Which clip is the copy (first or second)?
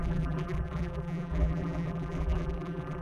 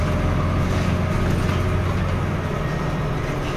first